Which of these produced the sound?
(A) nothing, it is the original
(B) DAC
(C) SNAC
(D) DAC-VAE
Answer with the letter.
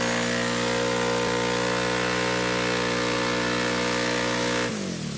A